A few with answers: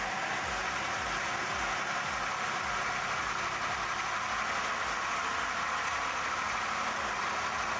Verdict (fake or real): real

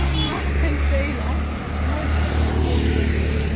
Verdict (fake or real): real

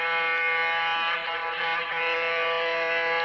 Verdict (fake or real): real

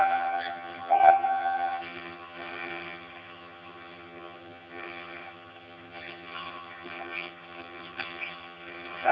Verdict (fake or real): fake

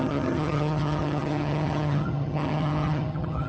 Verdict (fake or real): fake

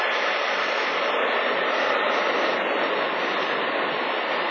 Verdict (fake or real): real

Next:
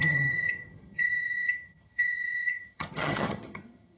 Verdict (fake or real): fake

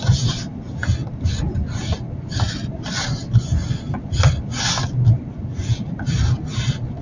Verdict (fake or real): real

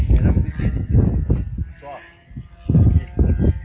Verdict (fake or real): real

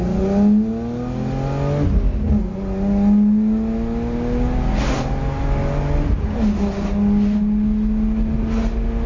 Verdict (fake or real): real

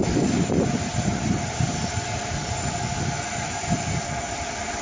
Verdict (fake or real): real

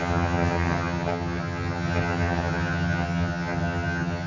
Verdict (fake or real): fake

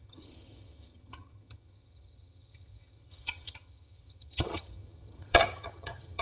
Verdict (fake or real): fake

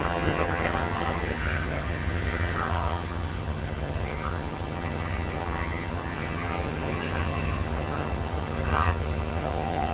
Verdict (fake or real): fake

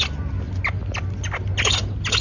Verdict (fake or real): real